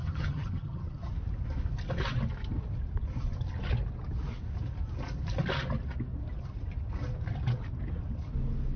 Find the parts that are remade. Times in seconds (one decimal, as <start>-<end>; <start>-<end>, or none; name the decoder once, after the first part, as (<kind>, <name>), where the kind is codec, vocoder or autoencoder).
0.0-1.1 (vocoder, HiFi-GAN)

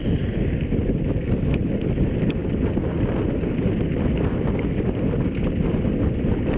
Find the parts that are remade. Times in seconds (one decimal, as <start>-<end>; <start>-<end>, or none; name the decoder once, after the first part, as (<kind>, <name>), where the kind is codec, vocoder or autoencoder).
none

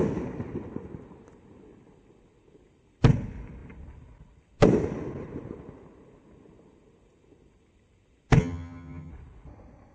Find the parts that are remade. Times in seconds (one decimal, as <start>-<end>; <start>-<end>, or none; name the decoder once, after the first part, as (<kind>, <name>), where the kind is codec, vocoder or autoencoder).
8.4-9.1 (vocoder, HiFi-GAN)

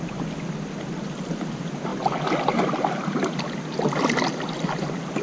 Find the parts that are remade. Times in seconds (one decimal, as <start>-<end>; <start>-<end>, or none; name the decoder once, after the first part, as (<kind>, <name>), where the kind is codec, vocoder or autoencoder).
none